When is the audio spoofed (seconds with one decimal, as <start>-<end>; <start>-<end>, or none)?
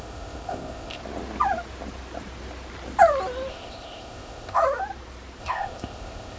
0.0-1.0; 3.5-4.6; 5.4-6.4